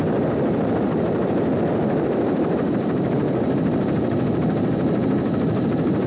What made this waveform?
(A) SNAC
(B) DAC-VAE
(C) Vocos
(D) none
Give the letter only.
D